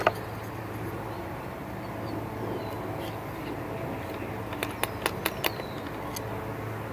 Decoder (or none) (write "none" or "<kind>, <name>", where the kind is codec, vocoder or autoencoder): none